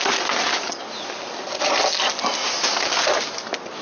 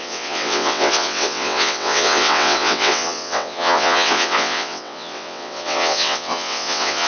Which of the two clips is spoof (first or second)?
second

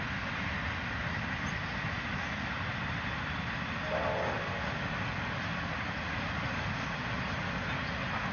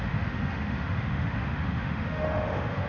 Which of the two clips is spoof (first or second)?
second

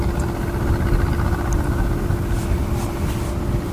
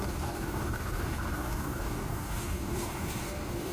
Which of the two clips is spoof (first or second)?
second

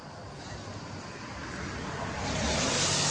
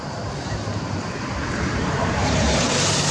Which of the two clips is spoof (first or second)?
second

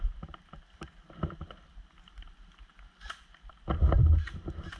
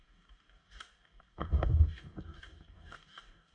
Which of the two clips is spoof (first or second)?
second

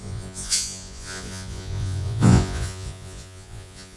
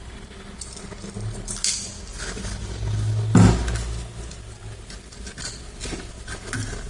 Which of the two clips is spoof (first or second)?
first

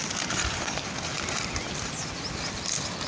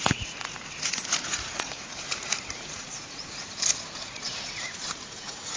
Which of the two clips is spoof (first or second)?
second